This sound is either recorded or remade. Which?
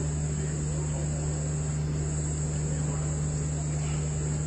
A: recorded